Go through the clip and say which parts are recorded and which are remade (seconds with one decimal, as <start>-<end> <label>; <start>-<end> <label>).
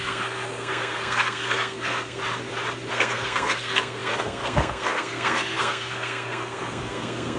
0.0-2.2 remade; 2.2-2.9 recorded; 2.9-7.4 remade